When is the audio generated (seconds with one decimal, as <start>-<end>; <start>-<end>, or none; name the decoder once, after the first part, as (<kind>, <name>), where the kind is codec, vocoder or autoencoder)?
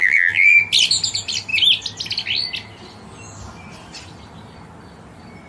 0.0-0.6 (vocoder, BigVGAN v2)